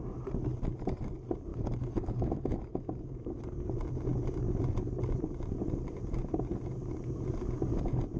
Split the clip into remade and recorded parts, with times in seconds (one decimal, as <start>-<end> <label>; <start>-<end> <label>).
0.0-1.5 recorded; 1.5-3.4 remade; 3.4-8.2 recorded

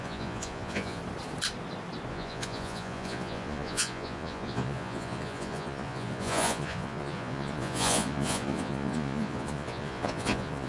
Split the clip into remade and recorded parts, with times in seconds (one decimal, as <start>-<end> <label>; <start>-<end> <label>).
0.0-1.0 remade; 1.0-2.1 recorded; 2.1-10.7 remade